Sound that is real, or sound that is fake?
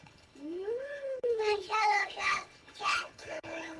fake